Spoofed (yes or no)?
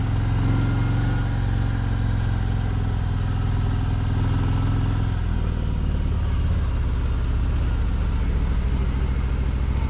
no